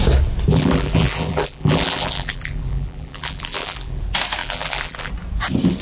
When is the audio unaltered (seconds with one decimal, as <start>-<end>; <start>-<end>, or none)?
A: 0.0-0.5; 4.0-4.4; 5.1-5.8